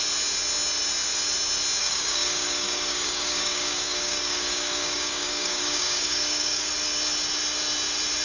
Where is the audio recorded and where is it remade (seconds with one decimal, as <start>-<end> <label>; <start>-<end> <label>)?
0.0-1.8 recorded; 1.8-6.7 remade; 6.7-8.2 recorded